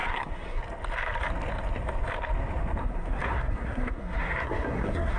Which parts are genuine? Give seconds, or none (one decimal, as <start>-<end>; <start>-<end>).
0.6-2.8